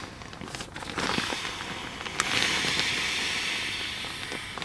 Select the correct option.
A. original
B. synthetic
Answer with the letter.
A